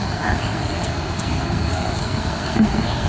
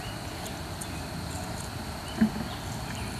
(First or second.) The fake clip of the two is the first